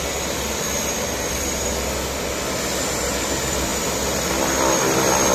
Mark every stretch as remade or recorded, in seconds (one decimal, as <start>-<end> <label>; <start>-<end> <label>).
0.0-5.3 recorded